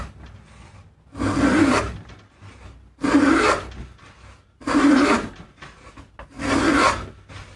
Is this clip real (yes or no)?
yes